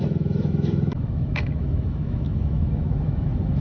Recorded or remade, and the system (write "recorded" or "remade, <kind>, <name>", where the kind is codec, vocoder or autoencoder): remade, autoencoder, DAC-VAE